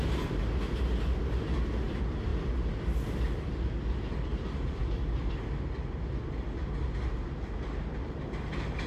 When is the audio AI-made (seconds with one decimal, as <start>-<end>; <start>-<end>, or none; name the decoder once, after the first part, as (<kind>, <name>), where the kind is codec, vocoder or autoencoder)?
none